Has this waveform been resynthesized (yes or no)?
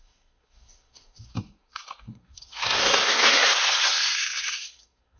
yes